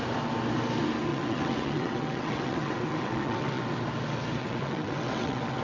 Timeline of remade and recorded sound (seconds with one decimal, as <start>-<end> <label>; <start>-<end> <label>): 0.0-1.1 recorded; 1.1-3.6 remade; 3.6-4.4 recorded; 4.4-5.6 remade